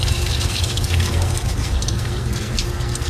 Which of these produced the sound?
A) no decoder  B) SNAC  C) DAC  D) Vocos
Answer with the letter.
B